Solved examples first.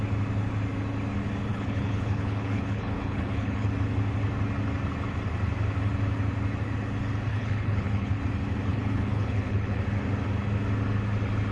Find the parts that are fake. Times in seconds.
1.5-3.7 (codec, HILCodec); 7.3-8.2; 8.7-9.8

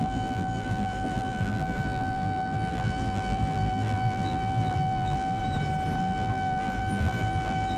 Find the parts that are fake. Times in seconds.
0.0-5.4 (vocoder, BigVGAN v2); 6.0-7.8

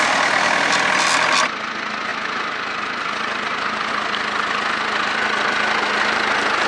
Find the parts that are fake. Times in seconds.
none

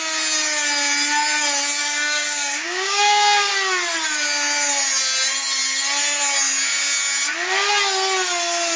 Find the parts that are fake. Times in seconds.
1.8-3.5 (codec, DAC)

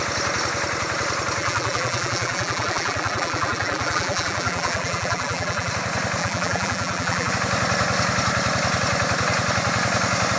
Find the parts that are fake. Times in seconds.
1.4-5.7 (vocoder, BigVGAN v2); 6.2-7.3

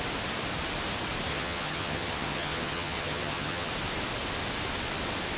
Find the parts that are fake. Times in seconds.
1.3-3.7 (vocoder, HiFi-GAN)